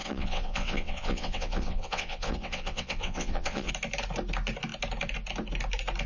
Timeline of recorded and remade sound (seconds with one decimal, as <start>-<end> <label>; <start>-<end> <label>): 0.0-3.7 remade; 3.7-6.1 recorded